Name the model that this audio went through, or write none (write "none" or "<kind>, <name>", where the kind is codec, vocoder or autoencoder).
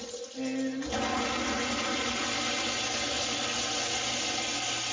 none